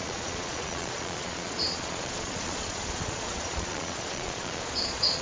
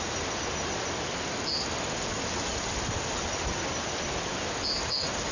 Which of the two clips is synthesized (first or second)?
first